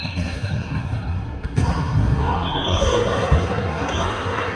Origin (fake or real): fake